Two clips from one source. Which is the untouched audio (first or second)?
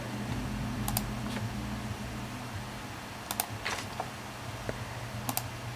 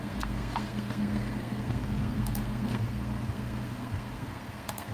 first